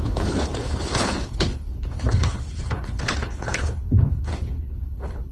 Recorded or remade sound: remade